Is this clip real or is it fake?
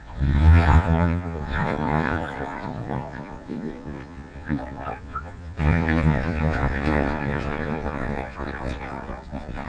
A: fake